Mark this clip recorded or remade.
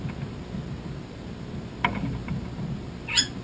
recorded